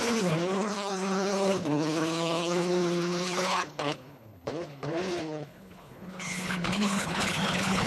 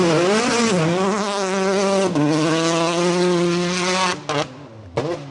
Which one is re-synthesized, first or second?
first